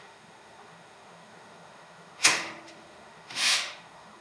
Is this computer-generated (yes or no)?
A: yes